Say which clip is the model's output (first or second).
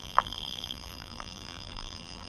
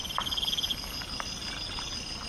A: first